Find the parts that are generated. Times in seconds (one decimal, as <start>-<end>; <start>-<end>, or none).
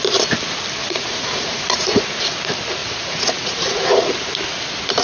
0.8-2.0; 2.8-4.1